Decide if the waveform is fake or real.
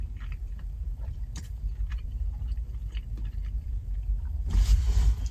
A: fake